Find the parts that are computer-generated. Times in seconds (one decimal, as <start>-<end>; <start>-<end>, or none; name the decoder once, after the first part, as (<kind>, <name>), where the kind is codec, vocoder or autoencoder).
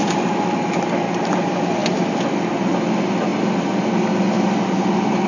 none